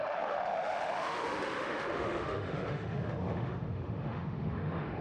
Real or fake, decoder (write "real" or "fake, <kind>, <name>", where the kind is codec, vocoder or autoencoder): fake, autoencoder, DAC-VAE